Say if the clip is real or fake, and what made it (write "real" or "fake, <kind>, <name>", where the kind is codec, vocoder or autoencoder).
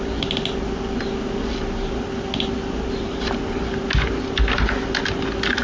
real